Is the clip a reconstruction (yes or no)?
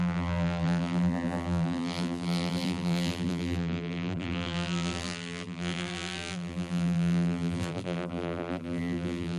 yes